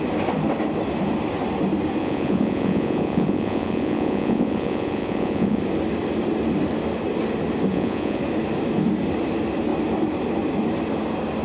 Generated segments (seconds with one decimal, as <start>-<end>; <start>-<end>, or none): 2.0-5.6; 7.7-8.2